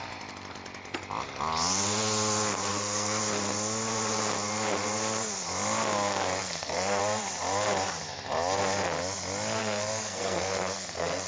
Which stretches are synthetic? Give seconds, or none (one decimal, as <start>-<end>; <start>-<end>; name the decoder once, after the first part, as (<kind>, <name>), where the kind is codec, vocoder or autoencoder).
2.7-3.2 (codec, SNAC); 6.4-7.0; 9.6-11.3